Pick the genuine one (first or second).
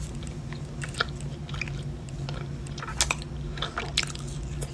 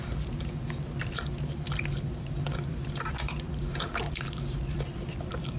first